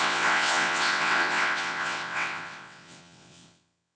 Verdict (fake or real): fake